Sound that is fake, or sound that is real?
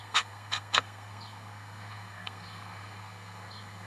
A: fake